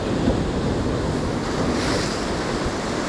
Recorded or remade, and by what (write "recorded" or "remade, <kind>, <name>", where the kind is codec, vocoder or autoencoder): recorded